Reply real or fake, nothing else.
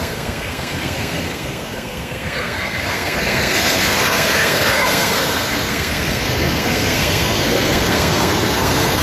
fake